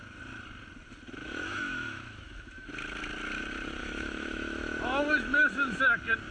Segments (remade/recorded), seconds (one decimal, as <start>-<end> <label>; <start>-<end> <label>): 0.0-1.2 recorded; 1.2-2.7 remade; 2.7-3.8 recorded; 3.8-5.8 remade; 5.8-6.3 recorded